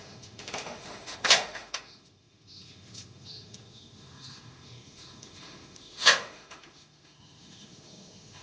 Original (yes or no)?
no